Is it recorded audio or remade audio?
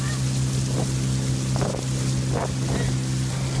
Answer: recorded